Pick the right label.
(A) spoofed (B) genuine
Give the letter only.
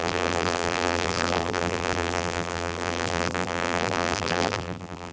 A